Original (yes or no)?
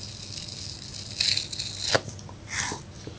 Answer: yes